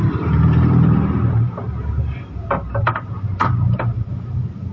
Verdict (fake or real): fake